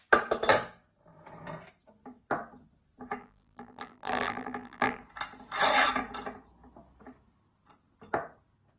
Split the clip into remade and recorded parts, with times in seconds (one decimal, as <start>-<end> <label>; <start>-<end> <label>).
0.0-3.2 recorded; 3.2-5.0 remade; 5.0-8.8 recorded